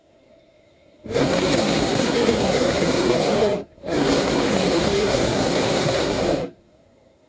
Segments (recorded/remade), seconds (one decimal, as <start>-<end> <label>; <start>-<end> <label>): 0.0-7.3 remade